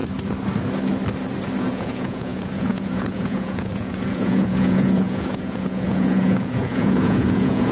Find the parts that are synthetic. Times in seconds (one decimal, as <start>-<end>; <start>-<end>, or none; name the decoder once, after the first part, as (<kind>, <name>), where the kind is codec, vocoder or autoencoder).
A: 1.6-7.7 (vocoder, Vocos)